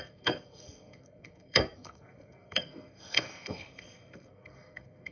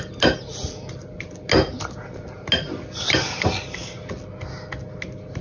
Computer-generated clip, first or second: first